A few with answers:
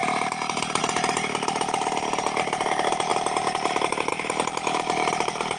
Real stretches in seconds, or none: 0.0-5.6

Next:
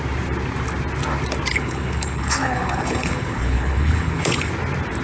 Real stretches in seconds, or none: 0.0-1.5; 4.5-5.0

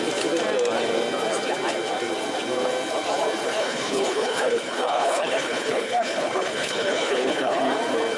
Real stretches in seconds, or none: 0.0-3.6; 7.6-8.2

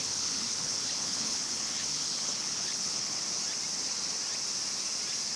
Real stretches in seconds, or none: 3.2-5.4

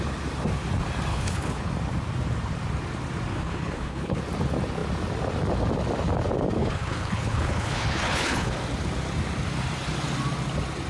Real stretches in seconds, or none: 0.0-1.1; 1.7-3.3; 4.2-6.6; 8.5-10.9